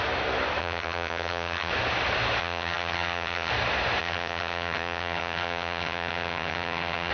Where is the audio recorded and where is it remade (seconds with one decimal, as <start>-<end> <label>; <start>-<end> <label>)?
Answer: 0.0-0.6 recorded; 0.6-1.7 remade; 1.7-2.4 recorded; 2.4-3.5 remade; 3.5-4.0 recorded; 4.0-7.1 remade